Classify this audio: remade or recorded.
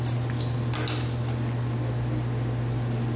recorded